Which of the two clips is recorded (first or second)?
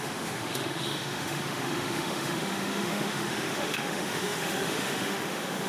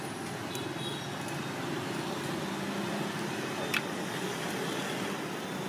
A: second